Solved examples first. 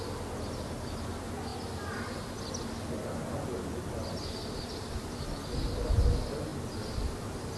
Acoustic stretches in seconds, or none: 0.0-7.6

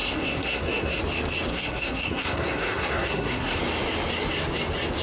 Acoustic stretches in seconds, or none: 1.0-1.5; 3.6-5.0

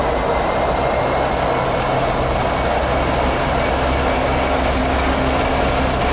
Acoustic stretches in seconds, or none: 0.0-6.1

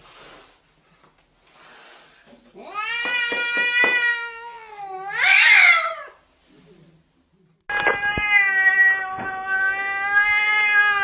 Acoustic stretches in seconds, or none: 0.0-4.1; 4.7-11.0